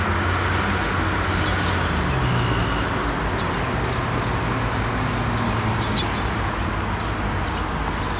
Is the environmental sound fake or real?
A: real